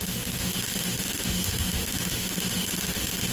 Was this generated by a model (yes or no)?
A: yes